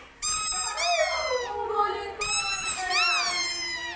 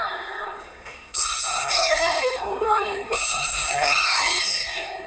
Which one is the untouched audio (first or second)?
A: first